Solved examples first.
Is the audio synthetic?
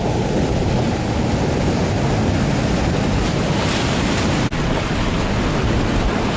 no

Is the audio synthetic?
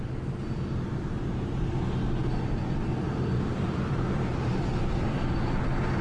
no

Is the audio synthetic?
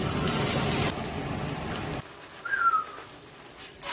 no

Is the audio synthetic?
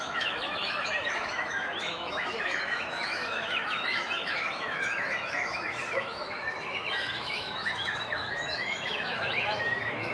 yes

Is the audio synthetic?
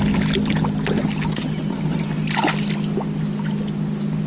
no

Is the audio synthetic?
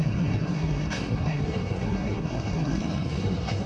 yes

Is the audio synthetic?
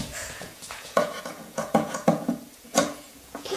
yes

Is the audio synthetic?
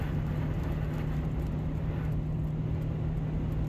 no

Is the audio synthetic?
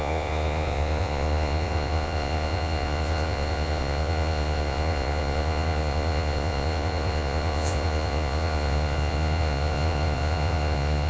yes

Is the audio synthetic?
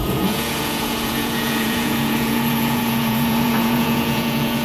yes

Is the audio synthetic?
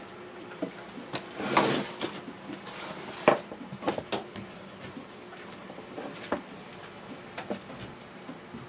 no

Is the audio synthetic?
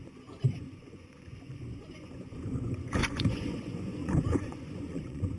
yes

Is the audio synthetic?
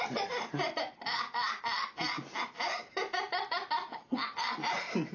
no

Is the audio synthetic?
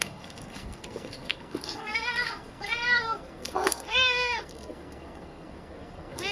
yes